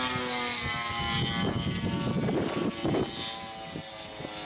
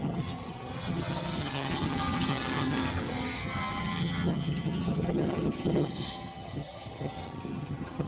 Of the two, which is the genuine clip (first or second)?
first